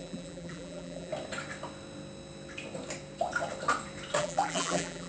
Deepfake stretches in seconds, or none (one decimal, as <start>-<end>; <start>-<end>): 0.0-1.1; 4.2-5.1